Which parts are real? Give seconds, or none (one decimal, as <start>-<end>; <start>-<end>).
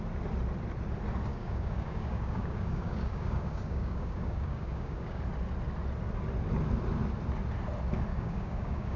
0.0-1.3; 5.2-8.1